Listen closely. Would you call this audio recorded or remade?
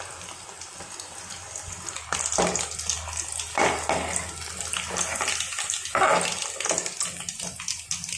recorded